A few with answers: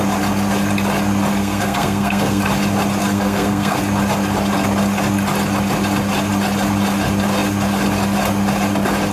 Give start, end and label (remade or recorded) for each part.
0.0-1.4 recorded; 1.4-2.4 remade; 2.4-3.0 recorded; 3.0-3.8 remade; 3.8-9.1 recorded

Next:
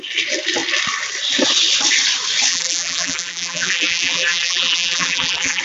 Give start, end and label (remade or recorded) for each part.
0.0-2.5 recorded; 2.5-5.6 remade

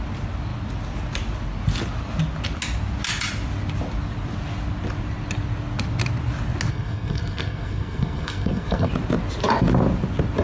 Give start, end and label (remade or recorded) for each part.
0.0-6.7 recorded; 6.7-8.9 remade; 8.9-10.4 recorded

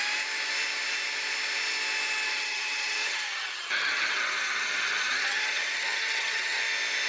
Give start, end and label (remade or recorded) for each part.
0.0-2.3 recorded; 2.3-6.6 remade; 6.6-7.1 recorded

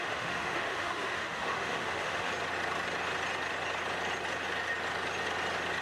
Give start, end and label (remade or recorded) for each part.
0.0-2.3 remade; 2.3-5.8 recorded

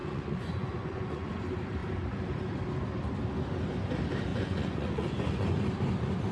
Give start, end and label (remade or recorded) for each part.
0.0-1.3 remade; 1.3-4.3 recorded; 4.3-5.6 remade; 5.6-6.3 recorded